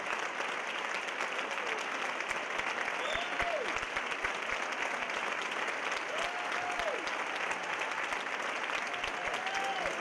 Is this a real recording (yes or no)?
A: yes